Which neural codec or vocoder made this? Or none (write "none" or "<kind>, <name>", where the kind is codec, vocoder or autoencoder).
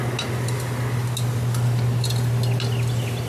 none